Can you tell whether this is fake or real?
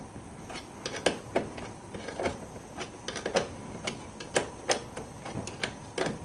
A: real